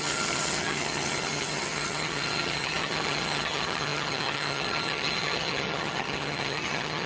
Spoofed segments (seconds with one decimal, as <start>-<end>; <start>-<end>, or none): 0.0-7.1